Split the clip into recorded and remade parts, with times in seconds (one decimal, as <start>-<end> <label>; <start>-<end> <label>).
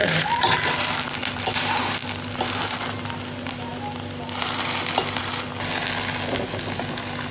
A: 0.0-0.7 remade; 0.7-7.3 recorded